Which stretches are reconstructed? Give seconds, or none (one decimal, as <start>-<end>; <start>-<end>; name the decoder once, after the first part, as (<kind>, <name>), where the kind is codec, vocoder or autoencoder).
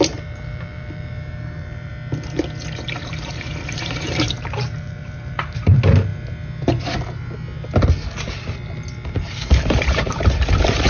0.0-1.9 (vocoder, BigVGAN v2); 3.0-6.1; 9.1-10.9